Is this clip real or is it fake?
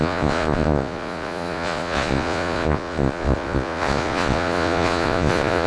fake